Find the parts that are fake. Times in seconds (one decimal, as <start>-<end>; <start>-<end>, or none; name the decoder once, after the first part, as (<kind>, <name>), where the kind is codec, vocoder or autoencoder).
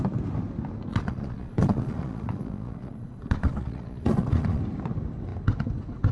0.9-4.6 (vocoder, Vocos)